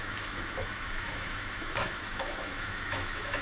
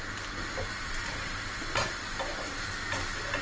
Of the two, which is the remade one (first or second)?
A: first